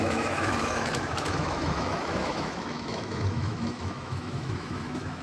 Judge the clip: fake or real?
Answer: fake